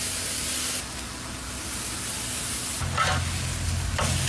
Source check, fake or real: real